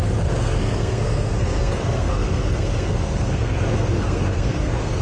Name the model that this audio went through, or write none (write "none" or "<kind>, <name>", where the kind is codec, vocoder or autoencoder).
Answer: codec, SNAC